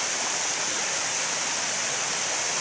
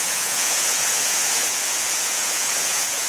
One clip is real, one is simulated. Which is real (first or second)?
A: first